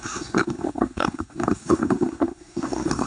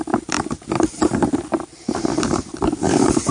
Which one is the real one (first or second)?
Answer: second